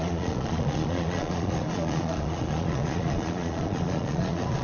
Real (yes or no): no